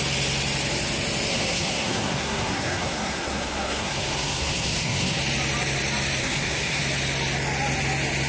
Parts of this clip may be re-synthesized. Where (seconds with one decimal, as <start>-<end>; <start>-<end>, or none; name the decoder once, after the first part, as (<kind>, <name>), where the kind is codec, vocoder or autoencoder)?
1.3-5.2 (codec, SNAC); 6.2-6.8